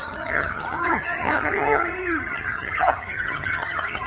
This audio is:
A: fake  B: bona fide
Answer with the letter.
A